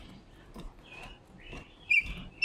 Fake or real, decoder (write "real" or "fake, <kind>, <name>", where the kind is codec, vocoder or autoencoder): real